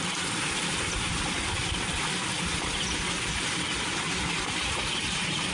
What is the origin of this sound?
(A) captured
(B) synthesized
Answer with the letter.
A